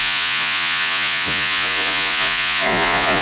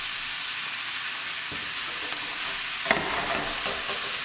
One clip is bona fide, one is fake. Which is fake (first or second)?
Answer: first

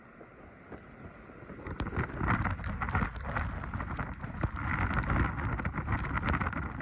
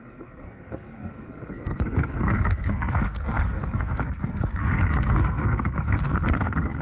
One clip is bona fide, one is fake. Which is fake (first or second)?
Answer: second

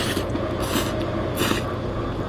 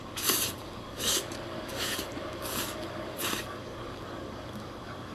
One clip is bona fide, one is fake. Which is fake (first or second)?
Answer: second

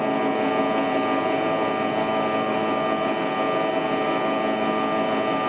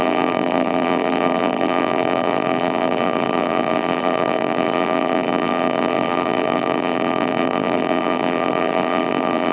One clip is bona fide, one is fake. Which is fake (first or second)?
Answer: second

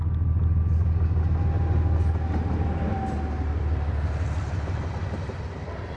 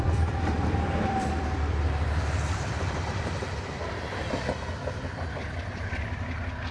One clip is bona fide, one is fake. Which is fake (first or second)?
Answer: second